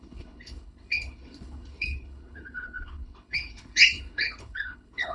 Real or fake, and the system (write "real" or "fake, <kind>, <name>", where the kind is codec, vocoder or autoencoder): fake, codec, HILCodec